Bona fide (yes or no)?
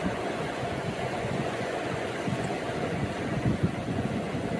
no